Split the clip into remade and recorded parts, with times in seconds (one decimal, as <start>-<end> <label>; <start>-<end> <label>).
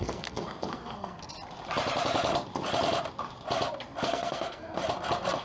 0.0-1.2 remade; 1.2-4.0 recorded; 4.0-4.8 remade; 4.8-5.4 recorded